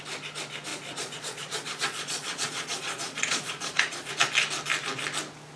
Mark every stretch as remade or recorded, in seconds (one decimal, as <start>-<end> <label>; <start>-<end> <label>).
0.0-0.7 recorded; 0.7-4.1 remade; 4.1-5.6 recorded

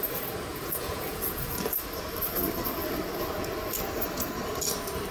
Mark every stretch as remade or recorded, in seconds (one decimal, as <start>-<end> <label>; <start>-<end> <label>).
0.0-0.5 recorded; 0.5-1.6 remade; 1.6-5.1 recorded

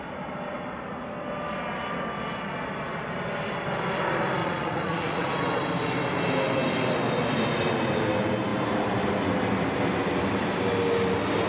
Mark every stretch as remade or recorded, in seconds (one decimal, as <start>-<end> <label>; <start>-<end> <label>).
0.0-4.4 recorded; 4.4-5.2 remade; 5.2-11.5 recorded

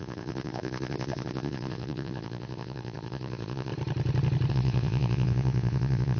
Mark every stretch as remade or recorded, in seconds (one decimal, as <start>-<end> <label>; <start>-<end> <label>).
0.0-3.7 remade; 3.7-4.5 recorded; 4.5-6.2 remade